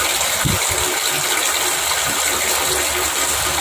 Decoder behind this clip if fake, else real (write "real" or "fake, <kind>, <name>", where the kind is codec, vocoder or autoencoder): fake, vocoder, BigVGAN v2